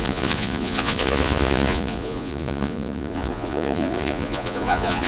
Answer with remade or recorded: remade